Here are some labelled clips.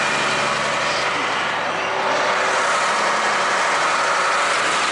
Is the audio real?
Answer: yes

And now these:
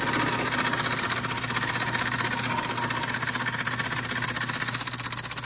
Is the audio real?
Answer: yes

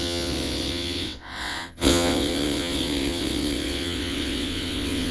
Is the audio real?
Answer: no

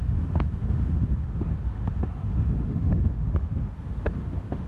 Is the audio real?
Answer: no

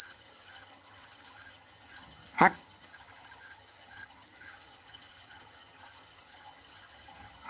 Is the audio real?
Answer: no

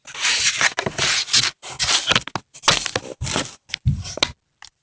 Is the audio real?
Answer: yes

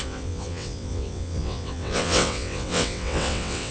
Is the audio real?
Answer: no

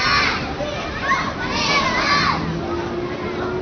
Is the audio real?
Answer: yes